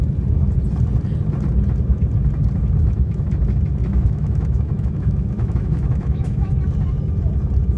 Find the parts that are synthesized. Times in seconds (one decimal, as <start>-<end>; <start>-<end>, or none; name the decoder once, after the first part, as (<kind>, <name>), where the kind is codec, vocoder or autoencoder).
2.8-3.4 (autoencoder, DAC-VAE); 3.8-6.5